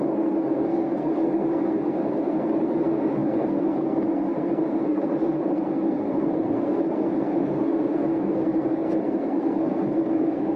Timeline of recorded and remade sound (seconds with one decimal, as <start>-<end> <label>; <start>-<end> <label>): 0.0-10.6 remade